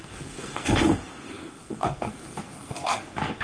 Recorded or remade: remade